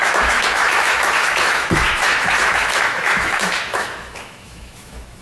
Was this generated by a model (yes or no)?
yes